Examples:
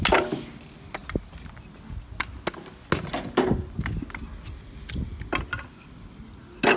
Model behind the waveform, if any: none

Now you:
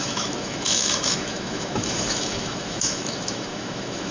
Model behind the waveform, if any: autoencoder, DAC-VAE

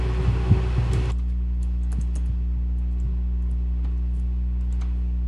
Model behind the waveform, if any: none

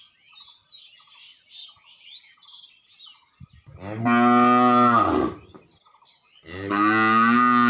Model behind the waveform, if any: none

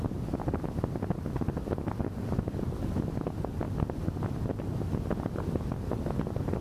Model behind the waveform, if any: none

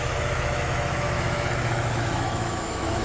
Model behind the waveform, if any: autoencoder, DAC-VAE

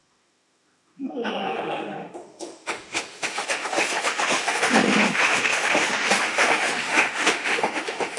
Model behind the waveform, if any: autoencoder, DAC-VAE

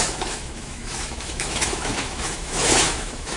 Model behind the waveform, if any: autoencoder, DAC-VAE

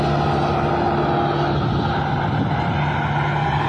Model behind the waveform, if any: none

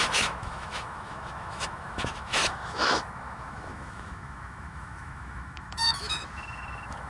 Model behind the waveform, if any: autoencoder, DAC-VAE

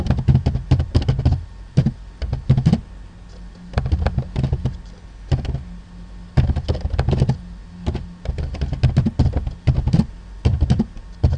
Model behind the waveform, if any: none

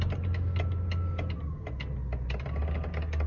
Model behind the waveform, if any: none